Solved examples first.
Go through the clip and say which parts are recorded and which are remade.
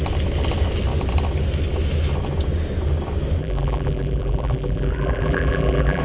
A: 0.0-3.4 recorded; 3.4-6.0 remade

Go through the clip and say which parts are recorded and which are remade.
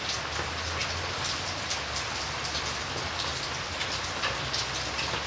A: 0.0-5.3 recorded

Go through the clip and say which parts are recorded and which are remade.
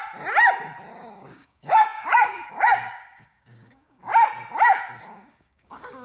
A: 0.0-0.9 recorded; 0.9-4.1 remade; 4.1-5.0 recorded; 5.0-6.0 remade